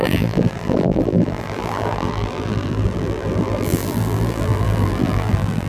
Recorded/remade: remade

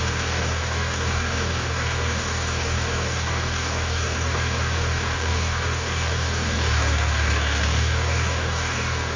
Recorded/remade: remade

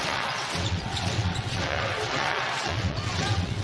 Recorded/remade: remade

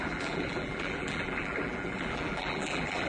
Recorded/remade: remade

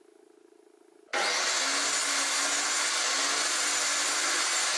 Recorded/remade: recorded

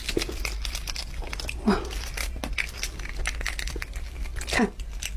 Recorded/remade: recorded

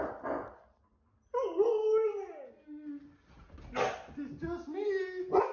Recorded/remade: recorded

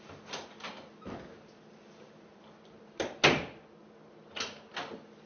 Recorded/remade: recorded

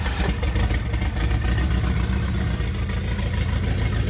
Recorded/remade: recorded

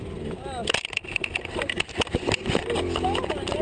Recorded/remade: recorded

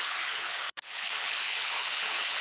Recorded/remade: remade